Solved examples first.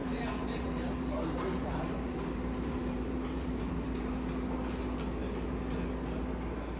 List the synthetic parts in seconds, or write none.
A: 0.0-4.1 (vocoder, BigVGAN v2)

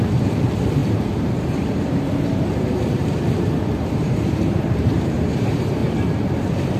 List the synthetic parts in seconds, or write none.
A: 0.0-5.8 (vocoder, BigVGAN v2)

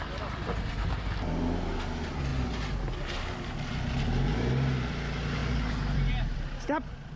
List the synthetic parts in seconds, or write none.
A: 5.4-6.4 (vocoder, BigVGAN v2)

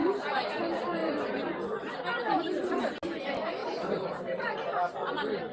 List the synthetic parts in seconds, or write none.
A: 0.0-0.6 (vocoder, BigVGAN v2); 3.6-4.4

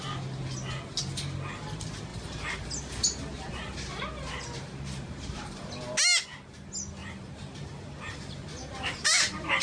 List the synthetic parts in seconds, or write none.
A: 2.1-5.7 (vocoder, BigVGAN v2); 7.0-9.6